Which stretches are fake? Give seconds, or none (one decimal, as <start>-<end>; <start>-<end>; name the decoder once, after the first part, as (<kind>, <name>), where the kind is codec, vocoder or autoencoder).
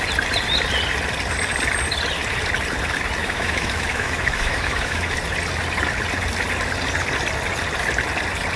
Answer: 3.2-5.1 (autoencoder, DAC-VAE)